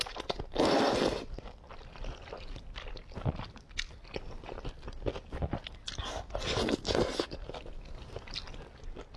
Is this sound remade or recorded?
recorded